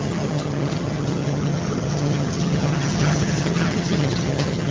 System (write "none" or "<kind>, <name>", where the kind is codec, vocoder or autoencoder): vocoder, HiFi-GAN